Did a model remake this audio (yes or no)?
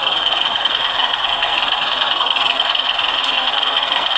yes